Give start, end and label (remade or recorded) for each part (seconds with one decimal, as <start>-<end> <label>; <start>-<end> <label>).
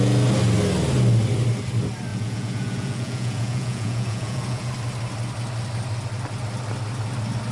0.0-2.1 recorded; 2.1-4.7 remade; 4.7-7.5 recorded